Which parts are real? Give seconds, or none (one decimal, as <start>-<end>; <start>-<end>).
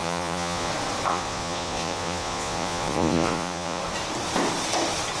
0.7-1.1; 3.8-5.2